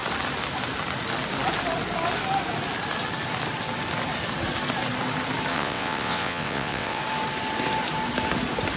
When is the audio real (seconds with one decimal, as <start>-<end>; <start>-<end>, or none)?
0.0-5.5; 7.0-8.8